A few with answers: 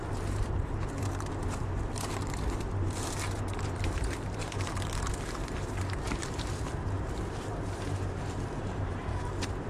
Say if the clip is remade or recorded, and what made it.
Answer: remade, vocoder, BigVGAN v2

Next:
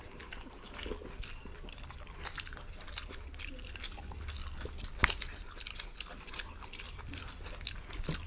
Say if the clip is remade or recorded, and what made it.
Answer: recorded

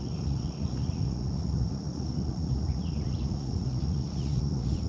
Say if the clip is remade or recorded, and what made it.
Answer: remade, vocoder, Vocos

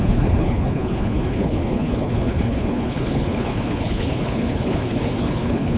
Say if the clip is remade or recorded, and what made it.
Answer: remade, codec, HILCodec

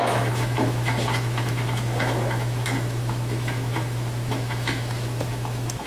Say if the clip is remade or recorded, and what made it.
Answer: remade, autoencoder, DAC-VAE